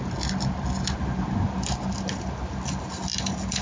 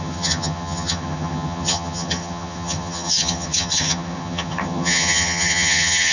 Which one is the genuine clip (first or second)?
first